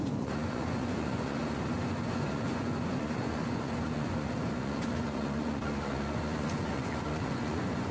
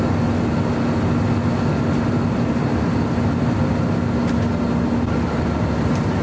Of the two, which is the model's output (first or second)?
first